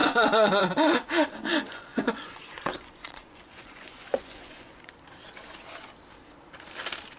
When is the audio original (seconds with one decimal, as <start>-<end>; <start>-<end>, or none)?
0.6-1.5; 4.9-7.2